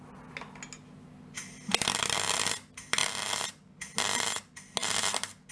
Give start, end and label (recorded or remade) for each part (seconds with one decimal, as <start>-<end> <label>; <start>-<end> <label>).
0.0-5.5 recorded